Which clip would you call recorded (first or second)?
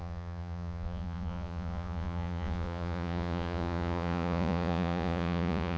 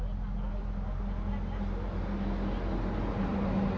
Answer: second